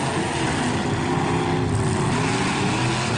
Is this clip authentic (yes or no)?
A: yes